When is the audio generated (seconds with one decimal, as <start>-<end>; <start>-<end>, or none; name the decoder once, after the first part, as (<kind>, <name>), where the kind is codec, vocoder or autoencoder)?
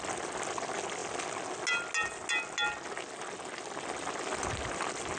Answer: none